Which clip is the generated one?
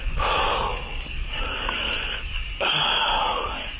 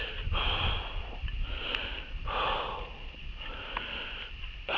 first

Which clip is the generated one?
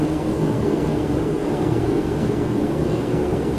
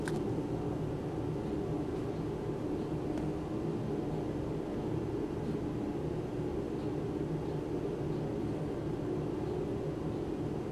first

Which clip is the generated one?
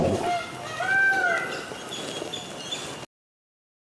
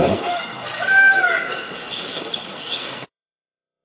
second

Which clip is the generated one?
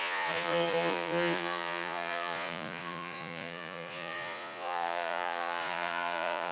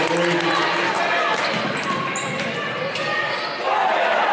first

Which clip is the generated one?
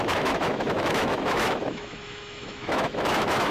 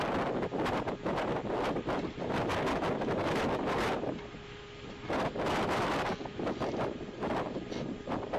first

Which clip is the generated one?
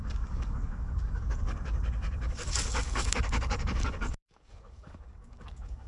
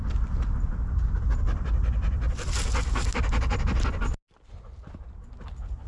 first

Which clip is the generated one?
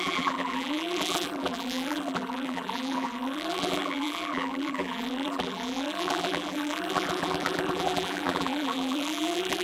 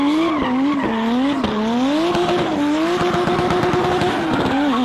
first